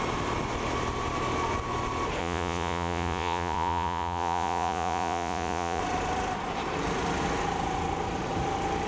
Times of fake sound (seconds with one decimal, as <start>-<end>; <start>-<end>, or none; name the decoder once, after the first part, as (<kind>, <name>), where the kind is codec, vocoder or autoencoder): 2.2-5.8 (vocoder, Vocos)

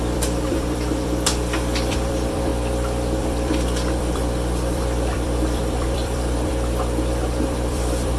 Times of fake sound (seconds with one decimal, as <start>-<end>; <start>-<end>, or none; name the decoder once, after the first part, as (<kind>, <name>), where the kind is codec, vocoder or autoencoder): 0.0-2.5 (vocoder, BigVGAN v2); 3.2-6.5; 7.4-8.2

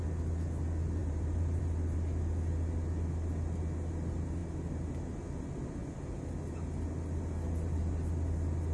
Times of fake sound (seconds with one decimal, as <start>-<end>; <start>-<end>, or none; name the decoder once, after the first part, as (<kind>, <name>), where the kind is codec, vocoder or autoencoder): 1.0-1.6 (vocoder, BigVGAN v2)

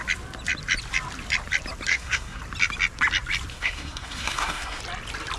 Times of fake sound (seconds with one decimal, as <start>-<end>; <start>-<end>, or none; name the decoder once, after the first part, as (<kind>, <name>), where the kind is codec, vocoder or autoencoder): 1.9-2.4 (codec, SNAC); 3.5-4.8